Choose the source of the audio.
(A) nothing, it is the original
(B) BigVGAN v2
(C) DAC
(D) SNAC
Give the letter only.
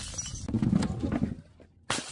A